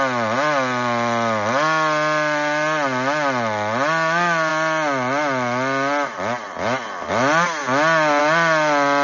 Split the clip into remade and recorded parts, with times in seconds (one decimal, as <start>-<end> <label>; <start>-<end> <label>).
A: 0.0-9.0 recorded